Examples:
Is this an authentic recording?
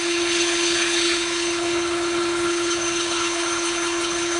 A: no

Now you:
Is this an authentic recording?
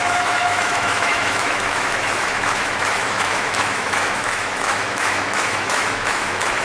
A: no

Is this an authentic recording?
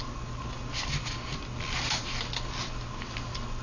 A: yes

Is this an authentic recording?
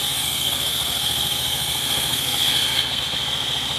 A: no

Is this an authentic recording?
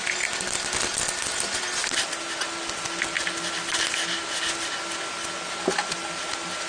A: yes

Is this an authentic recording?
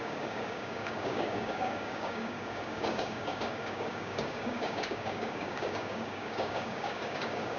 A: no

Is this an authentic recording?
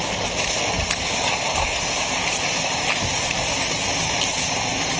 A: no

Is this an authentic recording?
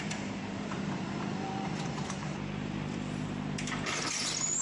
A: no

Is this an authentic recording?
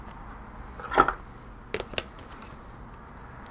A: yes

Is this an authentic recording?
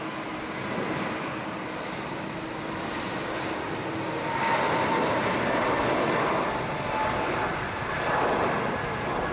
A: yes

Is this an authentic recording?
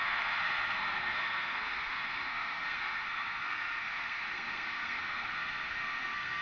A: no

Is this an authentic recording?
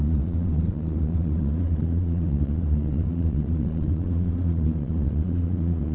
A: no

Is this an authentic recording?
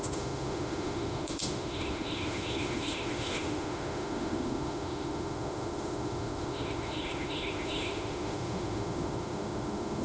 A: no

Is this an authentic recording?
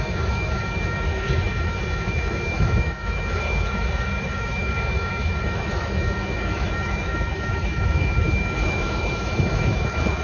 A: no